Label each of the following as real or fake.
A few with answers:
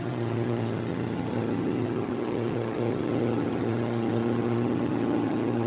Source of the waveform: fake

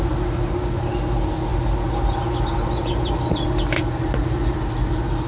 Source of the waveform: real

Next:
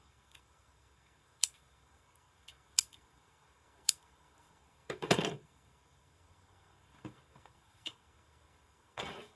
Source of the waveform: fake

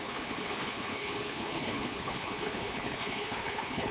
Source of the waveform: fake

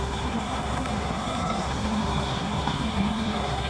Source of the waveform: fake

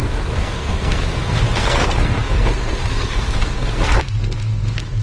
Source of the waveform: fake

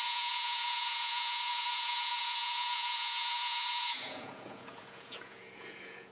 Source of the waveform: fake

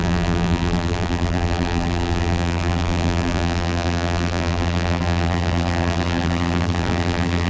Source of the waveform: fake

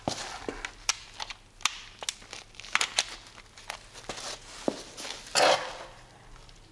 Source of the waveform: real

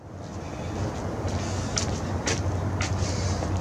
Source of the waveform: real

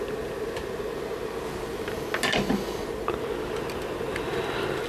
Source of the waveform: real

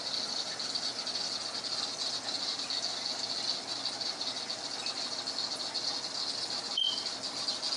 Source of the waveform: real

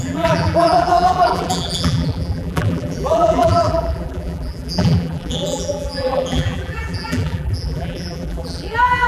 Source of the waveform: fake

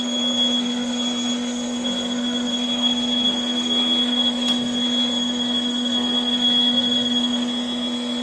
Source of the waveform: fake